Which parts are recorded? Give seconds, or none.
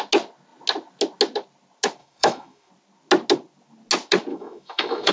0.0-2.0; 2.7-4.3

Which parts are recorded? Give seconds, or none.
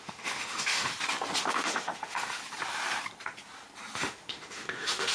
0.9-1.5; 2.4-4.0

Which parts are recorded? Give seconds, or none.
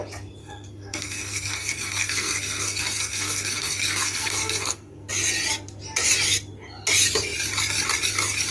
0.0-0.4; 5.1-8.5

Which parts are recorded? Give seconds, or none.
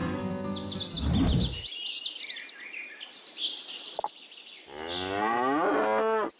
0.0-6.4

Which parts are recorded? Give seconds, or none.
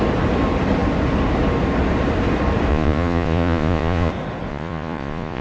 0.0-2.7; 4.1-4.5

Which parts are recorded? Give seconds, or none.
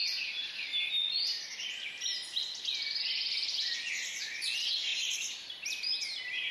0.0-6.5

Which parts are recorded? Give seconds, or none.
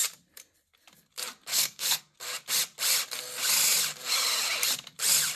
0.0-1.5; 2.0-5.4